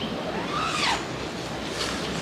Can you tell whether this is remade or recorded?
recorded